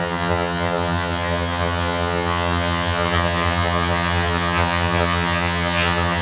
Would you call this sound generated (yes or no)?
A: yes